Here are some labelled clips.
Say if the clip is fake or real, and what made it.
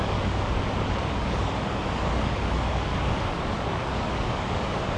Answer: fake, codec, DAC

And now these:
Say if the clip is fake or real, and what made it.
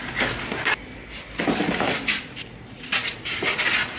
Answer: real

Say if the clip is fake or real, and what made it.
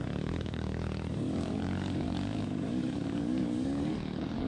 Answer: fake, codec, DAC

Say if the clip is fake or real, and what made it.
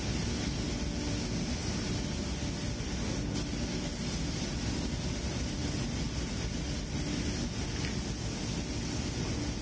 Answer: real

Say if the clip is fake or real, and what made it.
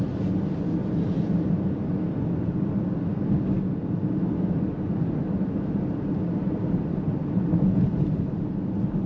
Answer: real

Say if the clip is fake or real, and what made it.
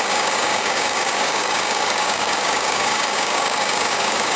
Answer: fake, codec, DAC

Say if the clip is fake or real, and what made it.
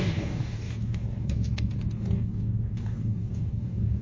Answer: fake, codec, DAC